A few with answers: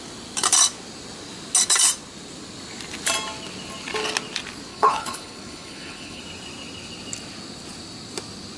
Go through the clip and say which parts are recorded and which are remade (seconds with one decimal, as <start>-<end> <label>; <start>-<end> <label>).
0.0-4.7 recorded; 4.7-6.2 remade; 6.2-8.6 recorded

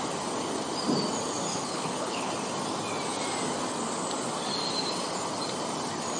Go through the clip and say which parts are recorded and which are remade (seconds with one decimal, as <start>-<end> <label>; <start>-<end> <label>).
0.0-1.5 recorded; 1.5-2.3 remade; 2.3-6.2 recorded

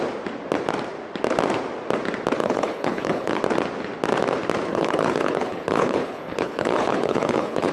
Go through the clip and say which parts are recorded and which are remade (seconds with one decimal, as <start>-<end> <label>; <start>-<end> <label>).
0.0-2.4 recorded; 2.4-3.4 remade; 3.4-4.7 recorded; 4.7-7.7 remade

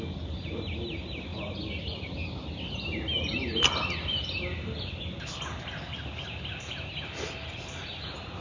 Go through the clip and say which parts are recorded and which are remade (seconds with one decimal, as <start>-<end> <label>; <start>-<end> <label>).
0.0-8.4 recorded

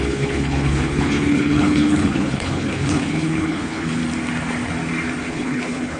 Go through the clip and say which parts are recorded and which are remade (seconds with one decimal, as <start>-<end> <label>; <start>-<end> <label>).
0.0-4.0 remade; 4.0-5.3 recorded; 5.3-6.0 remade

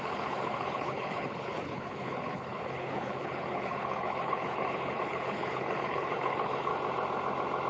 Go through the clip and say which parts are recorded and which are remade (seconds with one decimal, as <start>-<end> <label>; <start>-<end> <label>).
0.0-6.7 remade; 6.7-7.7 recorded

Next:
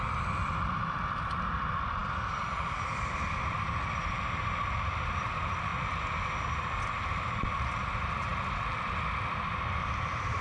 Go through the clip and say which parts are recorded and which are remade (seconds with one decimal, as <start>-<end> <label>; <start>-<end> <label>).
0.0-10.4 recorded